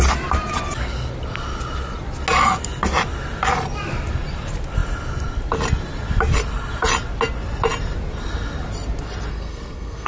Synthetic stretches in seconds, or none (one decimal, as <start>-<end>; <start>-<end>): 9.3-10.1